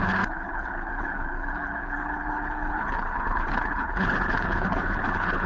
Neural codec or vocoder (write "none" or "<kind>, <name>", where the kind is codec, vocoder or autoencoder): codec, HILCodec